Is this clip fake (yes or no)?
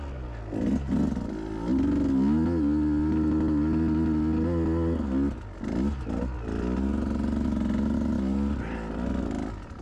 no